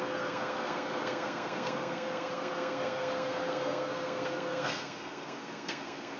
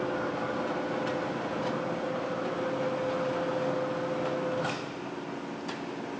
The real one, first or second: second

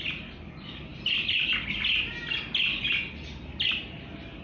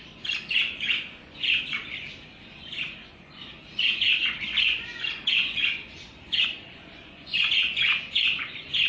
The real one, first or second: first